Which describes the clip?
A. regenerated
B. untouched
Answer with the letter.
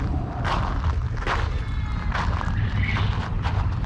B